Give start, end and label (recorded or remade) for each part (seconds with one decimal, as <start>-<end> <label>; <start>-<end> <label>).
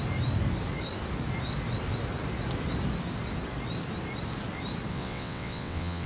0.0-4.9 recorded; 4.9-6.1 remade